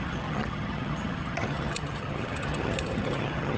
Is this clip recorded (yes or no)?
no